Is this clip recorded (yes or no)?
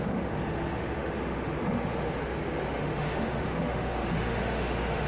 no